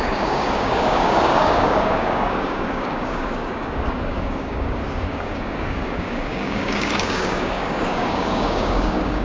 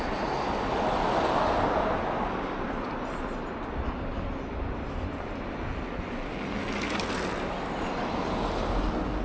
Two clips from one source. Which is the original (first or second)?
second